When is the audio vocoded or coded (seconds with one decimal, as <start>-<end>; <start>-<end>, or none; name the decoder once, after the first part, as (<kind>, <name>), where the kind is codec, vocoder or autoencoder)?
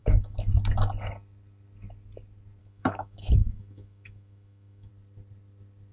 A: 0.0-0.5 (autoencoder, DAC-VAE); 2.6-4.9